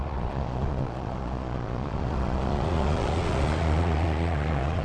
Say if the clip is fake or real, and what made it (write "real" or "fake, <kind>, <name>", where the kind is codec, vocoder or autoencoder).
fake, vocoder, Vocos